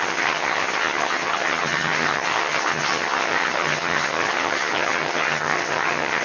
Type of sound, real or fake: fake